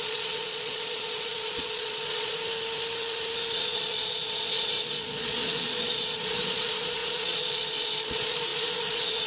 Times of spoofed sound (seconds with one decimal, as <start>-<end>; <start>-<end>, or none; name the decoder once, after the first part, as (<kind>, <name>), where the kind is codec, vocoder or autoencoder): 0.0-2.4 (vocoder, Vocos); 3.6-9.3